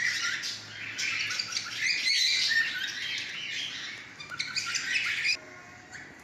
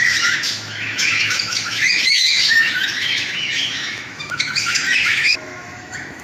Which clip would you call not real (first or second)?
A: second